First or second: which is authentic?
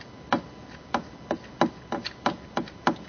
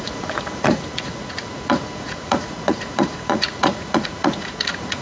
first